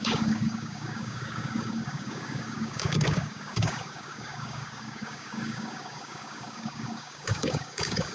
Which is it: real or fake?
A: fake